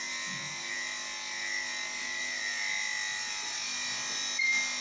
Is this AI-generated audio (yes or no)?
no